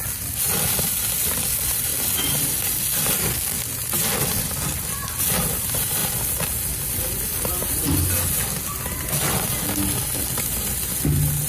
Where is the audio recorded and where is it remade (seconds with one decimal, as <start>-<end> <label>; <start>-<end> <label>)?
0.0-11.5 recorded